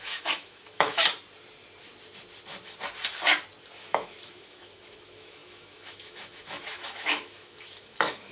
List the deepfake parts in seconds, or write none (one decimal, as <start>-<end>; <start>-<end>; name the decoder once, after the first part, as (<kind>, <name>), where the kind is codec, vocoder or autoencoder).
0.0-1.0 (autoencoder, DAC-VAE); 3.8-8.3